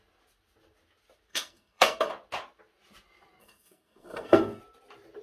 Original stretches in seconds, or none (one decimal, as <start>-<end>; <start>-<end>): 0.0-1.3; 2.1-3.4; 4.6-5.2